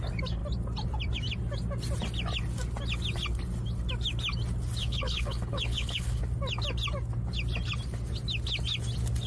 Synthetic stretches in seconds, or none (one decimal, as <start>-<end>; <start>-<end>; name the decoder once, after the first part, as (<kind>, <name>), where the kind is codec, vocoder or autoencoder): 4.8-6.2 (codec, HILCodec)